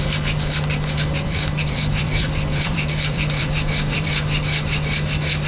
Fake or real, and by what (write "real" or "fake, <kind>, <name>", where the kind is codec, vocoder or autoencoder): fake, vocoder, BigVGAN v2